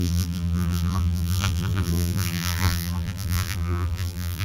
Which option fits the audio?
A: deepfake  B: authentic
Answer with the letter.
A